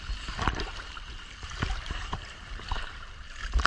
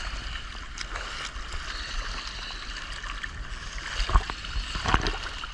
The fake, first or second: first